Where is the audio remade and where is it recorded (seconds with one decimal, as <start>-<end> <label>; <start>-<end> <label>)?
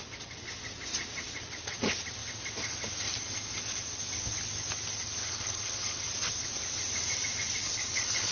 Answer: 0.0-5.2 recorded; 5.2-6.0 remade; 6.0-7.6 recorded; 7.6-8.3 remade